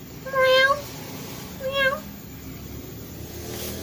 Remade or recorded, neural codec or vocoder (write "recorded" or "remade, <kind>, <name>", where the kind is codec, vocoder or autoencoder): recorded